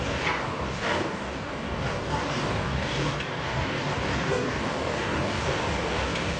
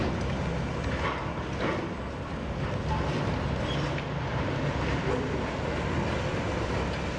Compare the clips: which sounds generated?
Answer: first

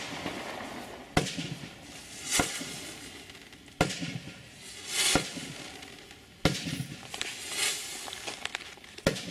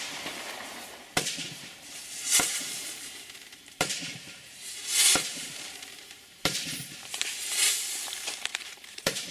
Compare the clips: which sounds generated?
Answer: second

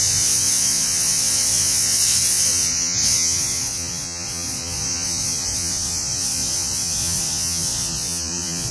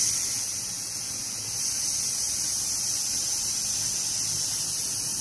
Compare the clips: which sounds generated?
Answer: first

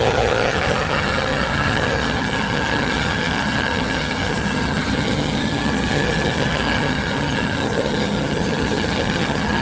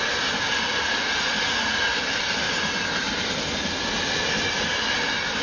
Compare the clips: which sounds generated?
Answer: first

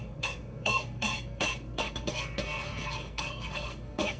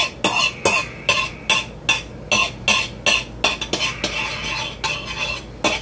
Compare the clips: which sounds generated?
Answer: first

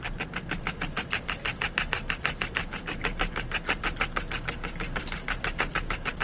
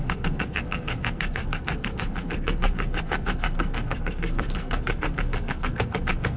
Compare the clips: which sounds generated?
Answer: second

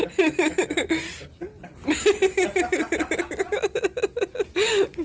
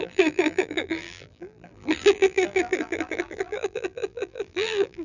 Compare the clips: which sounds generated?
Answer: second